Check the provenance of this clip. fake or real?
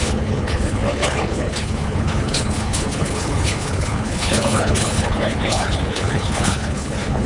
fake